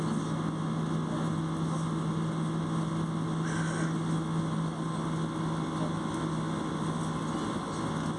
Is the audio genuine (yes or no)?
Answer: yes